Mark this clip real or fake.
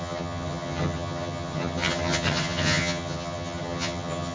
fake